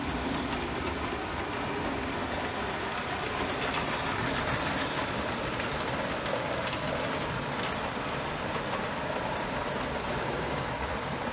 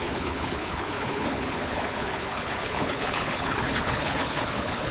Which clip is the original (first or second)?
first